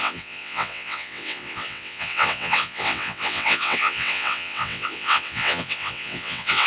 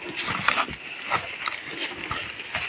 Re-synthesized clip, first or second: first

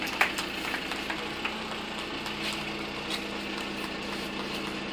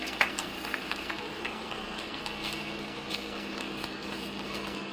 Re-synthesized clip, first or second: second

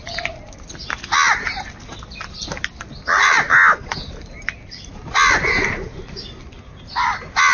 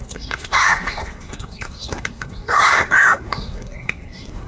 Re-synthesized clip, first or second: second